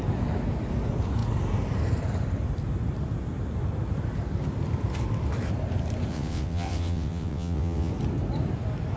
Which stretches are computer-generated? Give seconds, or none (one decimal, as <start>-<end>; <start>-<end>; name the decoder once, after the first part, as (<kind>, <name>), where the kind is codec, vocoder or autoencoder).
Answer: 6.1-7.9 (vocoder, WaveNeXt)